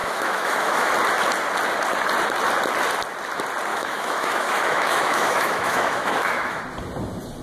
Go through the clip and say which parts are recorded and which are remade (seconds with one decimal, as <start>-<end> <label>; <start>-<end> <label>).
0.0-0.9 remade; 0.9-3.7 recorded; 3.7-6.6 remade; 6.6-7.4 recorded